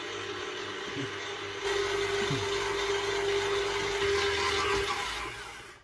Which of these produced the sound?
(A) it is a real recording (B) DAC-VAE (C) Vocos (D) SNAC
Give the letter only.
A